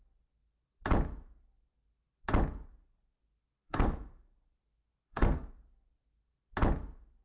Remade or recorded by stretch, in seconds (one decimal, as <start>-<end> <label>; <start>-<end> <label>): 0.0-2.8 recorded; 2.8-5.5 remade; 5.5-7.2 recorded